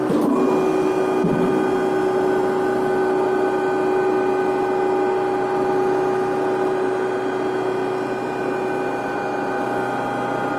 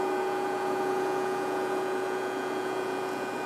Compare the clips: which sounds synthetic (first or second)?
second